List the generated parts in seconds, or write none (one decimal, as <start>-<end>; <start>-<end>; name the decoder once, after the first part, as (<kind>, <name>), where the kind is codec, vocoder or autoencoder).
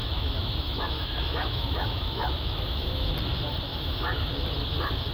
0.0-3.1 (autoencoder, DAC-VAE); 3.7-4.3